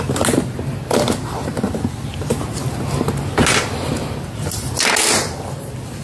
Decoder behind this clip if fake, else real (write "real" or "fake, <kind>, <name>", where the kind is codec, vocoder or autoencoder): real